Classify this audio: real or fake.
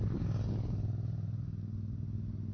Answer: real